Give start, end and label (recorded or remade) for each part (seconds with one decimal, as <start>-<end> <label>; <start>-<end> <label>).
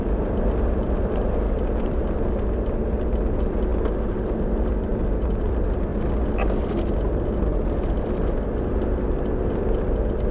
0.0-3.7 remade; 3.7-4.4 recorded; 4.4-4.9 remade; 4.9-5.4 recorded; 5.4-5.9 remade; 5.9-9.0 recorded; 9.0-10.3 remade